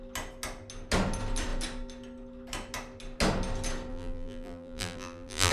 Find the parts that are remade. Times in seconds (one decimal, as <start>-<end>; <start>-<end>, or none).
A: 3.9-5.5